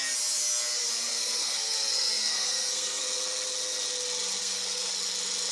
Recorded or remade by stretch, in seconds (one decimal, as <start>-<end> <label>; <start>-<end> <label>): 0.0-1.1 recorded; 1.1-3.0 remade; 3.0-4.4 recorded; 4.4-4.9 remade; 4.9-5.5 recorded